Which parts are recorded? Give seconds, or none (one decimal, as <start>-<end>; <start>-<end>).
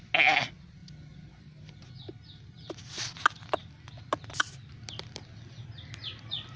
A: 0.0-6.6